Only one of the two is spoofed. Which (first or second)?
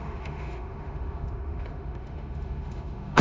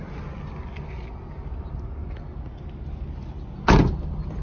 first